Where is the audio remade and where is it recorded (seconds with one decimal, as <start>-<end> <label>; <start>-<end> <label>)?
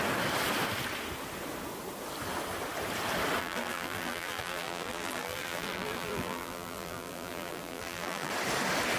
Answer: 0.0-3.4 recorded; 3.4-8.3 remade; 8.3-9.0 recorded